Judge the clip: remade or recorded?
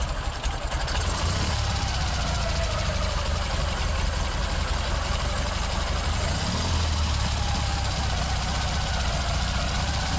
recorded